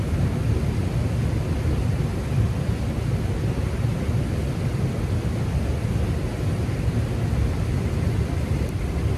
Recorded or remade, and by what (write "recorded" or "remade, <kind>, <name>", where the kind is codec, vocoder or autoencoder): recorded